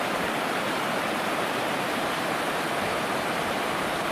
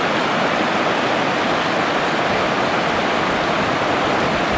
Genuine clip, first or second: second